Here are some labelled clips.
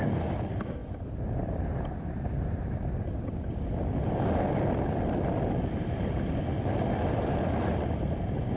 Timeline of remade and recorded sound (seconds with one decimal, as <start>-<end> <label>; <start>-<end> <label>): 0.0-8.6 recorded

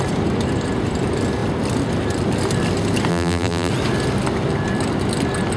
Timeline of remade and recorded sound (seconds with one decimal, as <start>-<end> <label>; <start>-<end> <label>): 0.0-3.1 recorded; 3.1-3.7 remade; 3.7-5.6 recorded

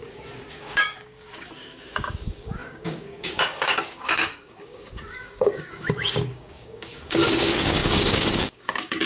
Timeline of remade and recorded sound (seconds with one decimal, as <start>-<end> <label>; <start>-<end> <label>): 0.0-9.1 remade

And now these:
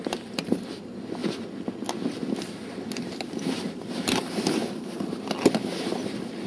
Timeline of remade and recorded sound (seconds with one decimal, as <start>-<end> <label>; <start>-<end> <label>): 0.0-6.5 recorded